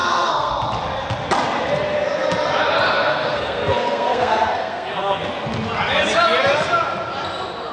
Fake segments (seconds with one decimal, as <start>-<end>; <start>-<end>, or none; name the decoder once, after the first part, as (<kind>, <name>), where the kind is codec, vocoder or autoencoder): 0.0-0.5 (codec, SNAC); 3.0-5.2